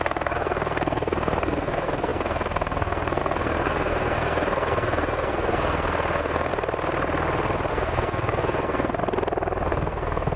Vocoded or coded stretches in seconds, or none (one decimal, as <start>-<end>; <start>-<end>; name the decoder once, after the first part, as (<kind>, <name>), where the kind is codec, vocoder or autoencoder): 0.0-6.5 (codec, SNAC); 7.7-9.0; 9.7-10.4